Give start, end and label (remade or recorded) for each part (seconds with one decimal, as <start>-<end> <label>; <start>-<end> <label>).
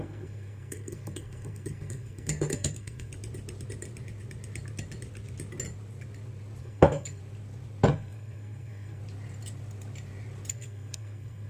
0.0-3.1 remade; 3.1-6.6 recorded; 6.6-7.2 remade; 7.2-7.9 recorded; 7.9-9.0 remade; 9.0-10.5 recorded; 10.5-11.5 remade